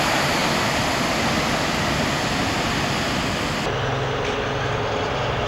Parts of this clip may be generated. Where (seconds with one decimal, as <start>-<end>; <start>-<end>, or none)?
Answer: none